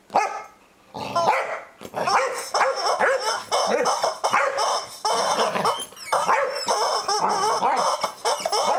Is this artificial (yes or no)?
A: no